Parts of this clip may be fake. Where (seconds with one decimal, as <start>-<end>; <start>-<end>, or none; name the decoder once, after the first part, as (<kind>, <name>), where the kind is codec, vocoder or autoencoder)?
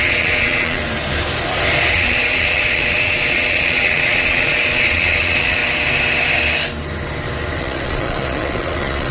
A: 0.0-0.8 (vocoder, Vocos); 1.9-5.6; 7.6-9.1